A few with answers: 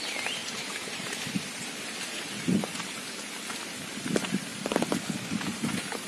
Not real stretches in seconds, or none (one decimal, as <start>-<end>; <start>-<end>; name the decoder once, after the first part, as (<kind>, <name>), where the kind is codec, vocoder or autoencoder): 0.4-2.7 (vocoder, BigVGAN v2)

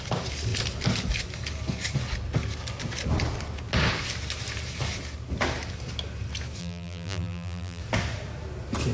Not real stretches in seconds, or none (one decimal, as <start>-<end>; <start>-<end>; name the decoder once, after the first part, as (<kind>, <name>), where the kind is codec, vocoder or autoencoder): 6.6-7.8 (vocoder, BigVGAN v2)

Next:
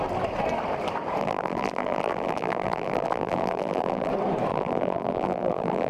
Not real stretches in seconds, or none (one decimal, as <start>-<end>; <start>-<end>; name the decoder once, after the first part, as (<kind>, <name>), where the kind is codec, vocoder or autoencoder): 1.2-4.1 (vocoder, BigVGAN v2); 4.5-5.9